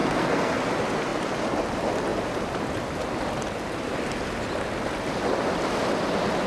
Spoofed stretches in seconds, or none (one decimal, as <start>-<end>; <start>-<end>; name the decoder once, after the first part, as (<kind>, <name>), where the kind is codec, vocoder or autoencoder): 0.0-0.6 (codec, SNAC)